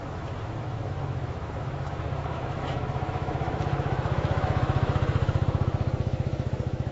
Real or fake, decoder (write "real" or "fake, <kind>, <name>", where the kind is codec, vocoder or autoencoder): fake, autoencoder, DAC-VAE